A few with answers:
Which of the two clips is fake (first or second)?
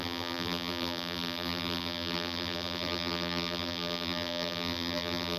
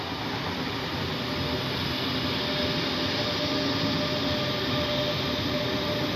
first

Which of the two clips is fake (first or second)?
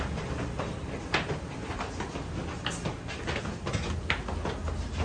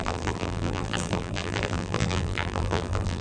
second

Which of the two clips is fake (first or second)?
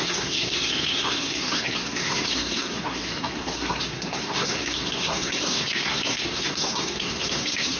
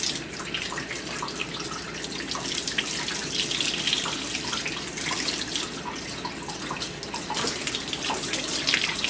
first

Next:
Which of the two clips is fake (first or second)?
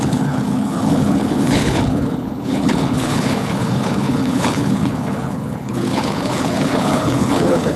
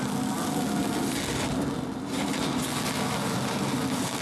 first